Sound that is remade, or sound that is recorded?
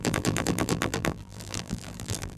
remade